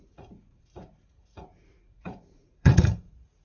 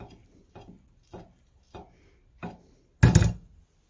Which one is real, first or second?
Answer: second